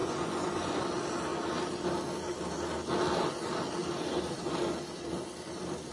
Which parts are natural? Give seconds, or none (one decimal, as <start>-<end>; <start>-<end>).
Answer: 0.8-5.9